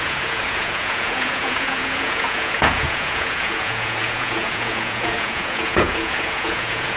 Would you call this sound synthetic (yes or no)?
yes